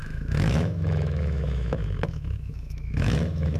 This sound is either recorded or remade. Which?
remade